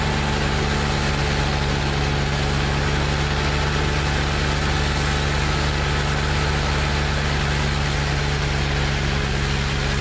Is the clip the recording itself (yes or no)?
yes